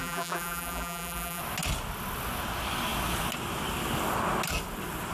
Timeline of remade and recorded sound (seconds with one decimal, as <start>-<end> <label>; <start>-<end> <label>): 0.0-1.4 remade; 1.4-5.1 recorded